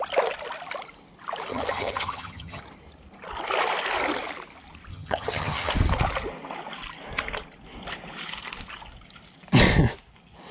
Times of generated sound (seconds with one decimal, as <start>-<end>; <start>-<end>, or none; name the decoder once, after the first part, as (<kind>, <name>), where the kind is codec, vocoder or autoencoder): 1.5-2.6 (vocoder, HiFi-GAN); 4.9-5.7